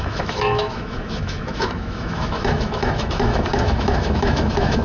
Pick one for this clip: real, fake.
fake